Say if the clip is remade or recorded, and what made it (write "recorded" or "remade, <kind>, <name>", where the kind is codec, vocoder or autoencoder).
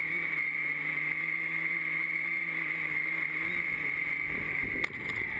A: remade, vocoder, BigVGAN v2